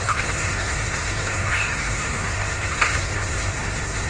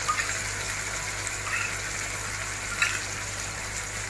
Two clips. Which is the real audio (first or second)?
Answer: second